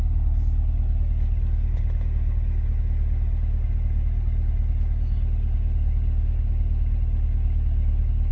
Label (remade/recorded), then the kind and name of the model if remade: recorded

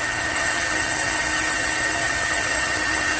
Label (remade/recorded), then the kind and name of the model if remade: remade, vocoder, HiFi-GAN